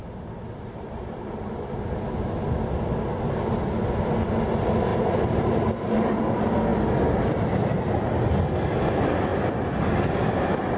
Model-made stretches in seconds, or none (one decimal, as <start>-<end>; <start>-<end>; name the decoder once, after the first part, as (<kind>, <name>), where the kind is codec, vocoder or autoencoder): 0.0-1.7 (vocoder, BigVGAN v2); 4.9-6.2